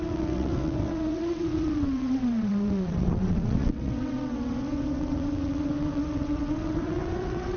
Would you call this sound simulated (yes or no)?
yes